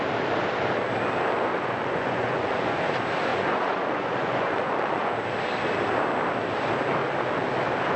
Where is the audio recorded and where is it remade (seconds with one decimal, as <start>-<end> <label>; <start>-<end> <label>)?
0.0-1.5 recorded; 1.5-2.8 remade; 2.8-3.3 recorded; 3.3-5.1 remade; 5.1-8.0 recorded